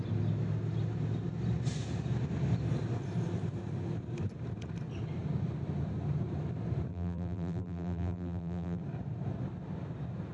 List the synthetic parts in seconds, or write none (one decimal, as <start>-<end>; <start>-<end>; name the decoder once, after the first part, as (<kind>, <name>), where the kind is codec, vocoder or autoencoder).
6.9-8.8 (vocoder, BigVGAN v2)